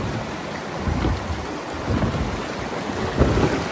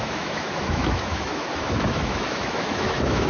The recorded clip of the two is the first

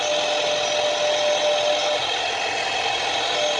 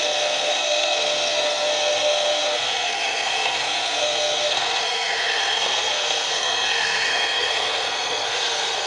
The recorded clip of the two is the first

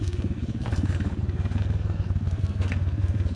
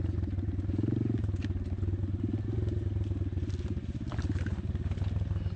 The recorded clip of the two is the second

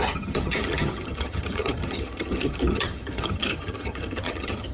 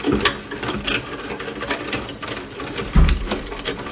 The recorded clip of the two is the second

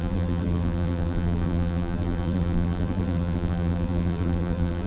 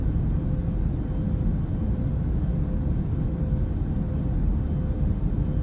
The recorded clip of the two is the second